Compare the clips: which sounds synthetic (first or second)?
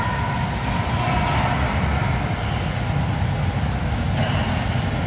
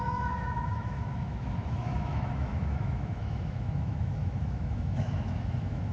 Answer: second